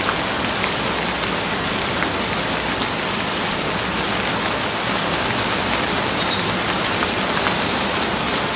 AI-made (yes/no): no